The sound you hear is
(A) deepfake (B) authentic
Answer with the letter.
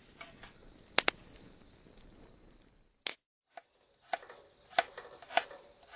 B